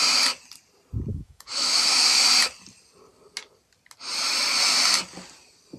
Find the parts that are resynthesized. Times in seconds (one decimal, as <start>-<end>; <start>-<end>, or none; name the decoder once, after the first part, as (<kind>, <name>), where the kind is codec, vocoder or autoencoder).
1.1-2.2 (autoencoder, DAC-VAE)